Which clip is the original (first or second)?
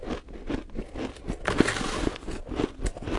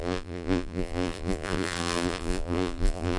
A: first